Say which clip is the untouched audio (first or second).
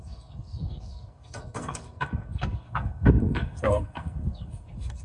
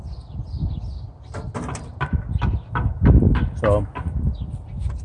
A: second